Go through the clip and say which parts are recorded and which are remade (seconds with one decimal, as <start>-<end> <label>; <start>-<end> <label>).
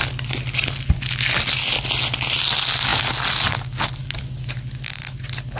0.0-5.6 recorded